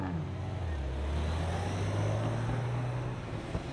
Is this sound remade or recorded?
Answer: recorded